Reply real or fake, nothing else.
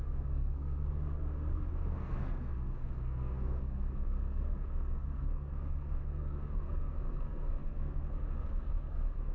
fake